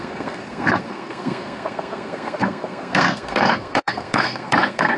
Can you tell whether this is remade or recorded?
remade